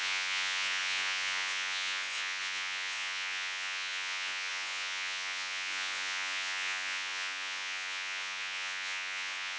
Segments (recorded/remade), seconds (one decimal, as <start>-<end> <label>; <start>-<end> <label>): 0.0-9.6 remade